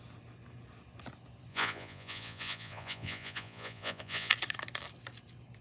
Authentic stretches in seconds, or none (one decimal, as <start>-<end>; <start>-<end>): 0.0-1.5; 4.3-5.6